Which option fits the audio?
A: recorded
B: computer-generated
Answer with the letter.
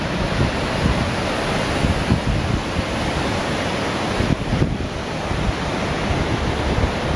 A